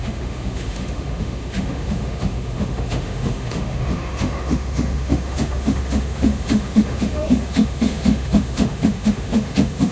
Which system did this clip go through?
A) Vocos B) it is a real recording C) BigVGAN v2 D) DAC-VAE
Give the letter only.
D